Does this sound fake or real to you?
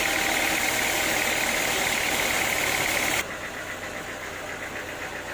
real